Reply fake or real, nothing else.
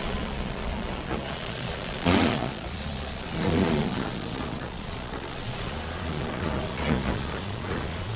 fake